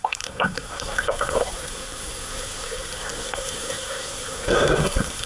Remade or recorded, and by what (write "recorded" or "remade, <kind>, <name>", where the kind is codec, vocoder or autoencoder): remade, codec, SNAC